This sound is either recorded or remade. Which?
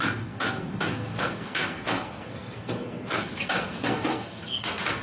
remade